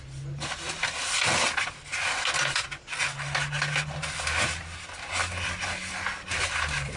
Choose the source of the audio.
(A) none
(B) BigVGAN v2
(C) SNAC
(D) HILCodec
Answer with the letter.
A